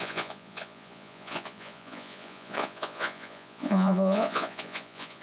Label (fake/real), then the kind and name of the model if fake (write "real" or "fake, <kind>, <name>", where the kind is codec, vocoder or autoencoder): fake, vocoder, Vocos